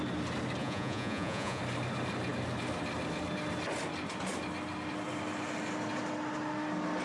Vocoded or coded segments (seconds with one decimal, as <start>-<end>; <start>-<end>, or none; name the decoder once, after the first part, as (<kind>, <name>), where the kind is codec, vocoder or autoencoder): 0.6-1.6 (vocoder, Vocos)